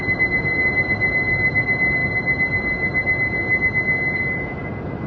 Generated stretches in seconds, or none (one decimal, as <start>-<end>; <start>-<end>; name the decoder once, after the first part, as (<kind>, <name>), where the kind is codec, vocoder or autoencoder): none